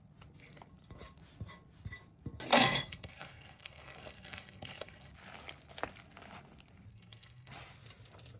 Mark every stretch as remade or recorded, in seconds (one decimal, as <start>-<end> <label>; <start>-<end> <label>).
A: 0.0-2.5 recorded; 2.5-5.1 remade; 5.1-6.9 recorded; 6.9-7.5 remade; 7.5-8.4 recorded